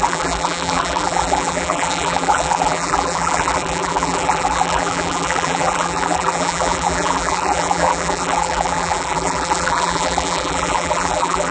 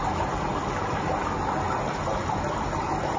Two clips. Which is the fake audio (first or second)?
first